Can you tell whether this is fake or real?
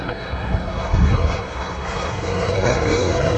fake